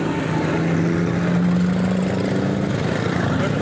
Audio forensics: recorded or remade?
recorded